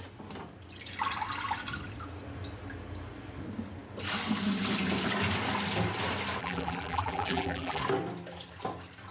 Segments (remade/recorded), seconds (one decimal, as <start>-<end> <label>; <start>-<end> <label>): 0.0-6.4 recorded; 6.4-7.8 remade; 7.8-9.1 recorded